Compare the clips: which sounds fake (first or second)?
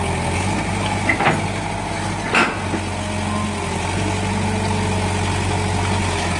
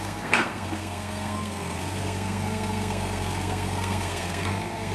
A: second